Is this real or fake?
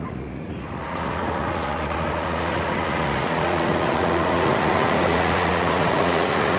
fake